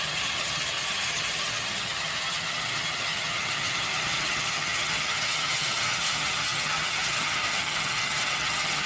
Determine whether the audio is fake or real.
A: fake